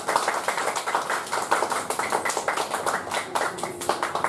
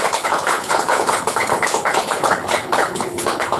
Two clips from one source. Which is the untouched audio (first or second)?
first